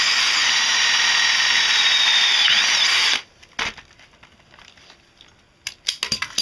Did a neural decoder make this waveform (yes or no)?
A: no